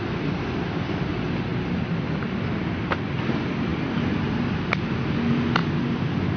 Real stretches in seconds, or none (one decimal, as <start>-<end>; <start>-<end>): 1.1-3.7; 4.9-6.4